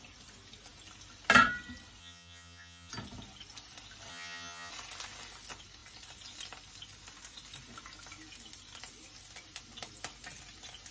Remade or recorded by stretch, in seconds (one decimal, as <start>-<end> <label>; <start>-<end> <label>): 0.0-2.0 recorded; 2.0-2.9 remade; 2.9-4.1 recorded; 4.1-4.7 remade; 4.7-10.9 recorded